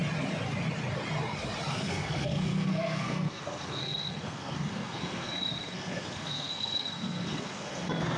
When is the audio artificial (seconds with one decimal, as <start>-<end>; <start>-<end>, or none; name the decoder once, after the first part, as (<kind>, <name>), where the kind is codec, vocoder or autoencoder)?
1.7-8.2 (codec, SNAC)